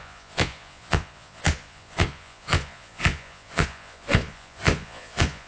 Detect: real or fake fake